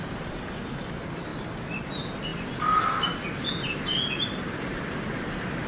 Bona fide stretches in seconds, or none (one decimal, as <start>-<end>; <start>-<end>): 0.0-5.7